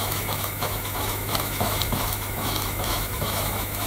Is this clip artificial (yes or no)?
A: yes